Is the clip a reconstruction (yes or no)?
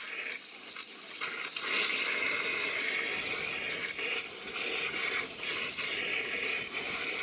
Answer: no